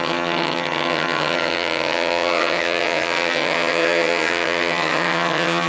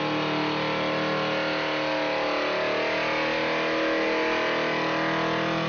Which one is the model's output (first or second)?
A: first